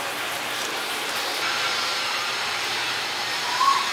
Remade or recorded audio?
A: remade